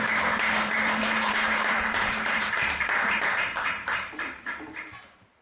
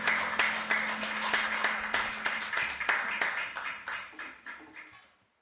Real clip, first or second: second